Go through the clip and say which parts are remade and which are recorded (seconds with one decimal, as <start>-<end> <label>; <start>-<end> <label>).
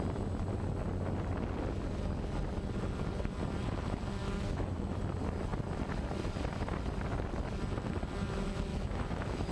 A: 0.0-4.2 recorded; 4.2-5.0 remade; 5.0-8.7 recorded; 8.7-9.5 remade